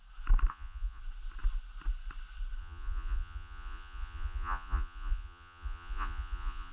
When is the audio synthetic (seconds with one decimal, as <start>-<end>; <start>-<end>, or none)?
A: 0.5-1.0; 2.6-6.7